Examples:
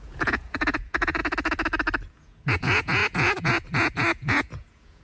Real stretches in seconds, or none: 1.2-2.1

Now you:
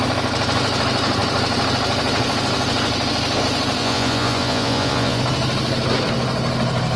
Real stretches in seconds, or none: 0.0-3.8; 5.2-7.0

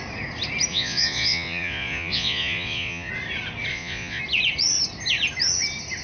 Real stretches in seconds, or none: 0.0-0.7; 3.1-3.7; 4.2-6.0

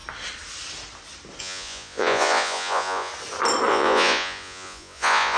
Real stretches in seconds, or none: 0.0-1.4; 3.1-3.7

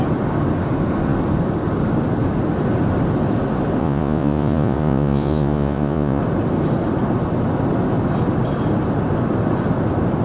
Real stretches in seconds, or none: 0.0-3.8; 6.2-10.2

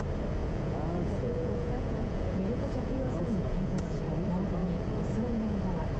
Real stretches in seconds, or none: 0.0-0.4; 4.0-4.6; 5.6-6.0

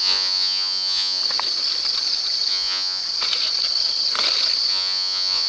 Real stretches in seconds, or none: 1.2-2.5; 3.0-4.7

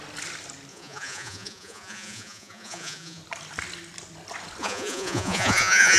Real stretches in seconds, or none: 0.0-0.7; 3.2-4.6